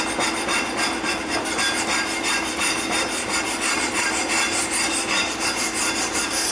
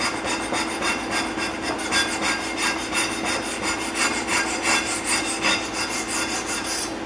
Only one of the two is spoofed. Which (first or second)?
first